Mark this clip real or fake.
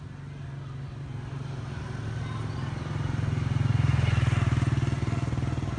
real